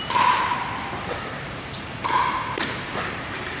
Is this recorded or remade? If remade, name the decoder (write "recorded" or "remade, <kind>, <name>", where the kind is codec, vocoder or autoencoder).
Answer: remade, vocoder, BigVGAN v2